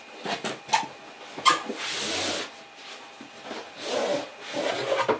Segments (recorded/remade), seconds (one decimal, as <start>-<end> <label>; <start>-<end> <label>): 0.0-5.2 recorded